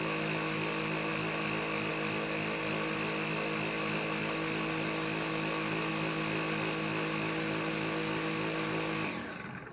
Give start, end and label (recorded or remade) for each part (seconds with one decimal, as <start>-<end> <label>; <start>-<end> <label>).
0.0-9.7 recorded